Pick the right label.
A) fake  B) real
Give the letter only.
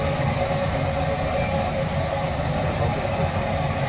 B